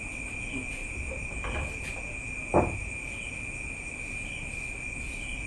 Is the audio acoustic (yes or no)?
yes